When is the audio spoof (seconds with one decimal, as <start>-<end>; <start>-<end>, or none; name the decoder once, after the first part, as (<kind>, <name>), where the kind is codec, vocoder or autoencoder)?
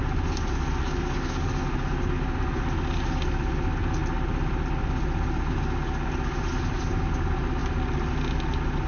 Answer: none